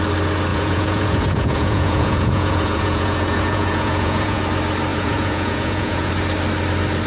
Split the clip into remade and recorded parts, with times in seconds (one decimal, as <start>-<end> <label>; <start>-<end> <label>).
0.0-0.5 recorded; 0.5-4.4 remade; 4.4-4.9 recorded; 4.9-6.1 remade; 6.1-7.1 recorded